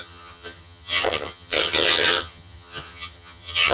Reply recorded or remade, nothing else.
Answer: remade